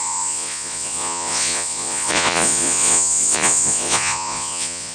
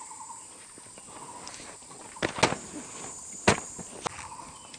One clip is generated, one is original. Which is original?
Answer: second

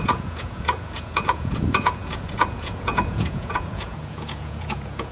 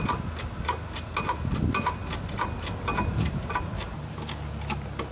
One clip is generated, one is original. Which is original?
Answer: second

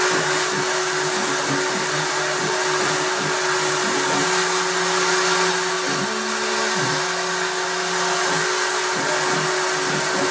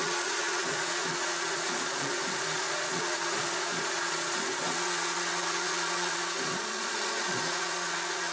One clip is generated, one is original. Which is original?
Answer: first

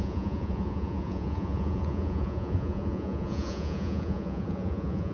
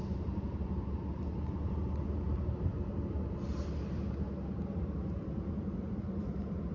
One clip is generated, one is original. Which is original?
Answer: second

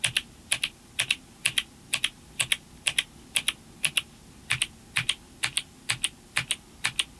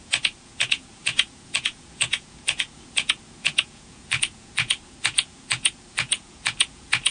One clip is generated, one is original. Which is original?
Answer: first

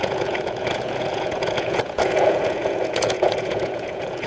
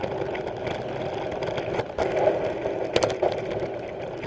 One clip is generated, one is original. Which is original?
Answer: second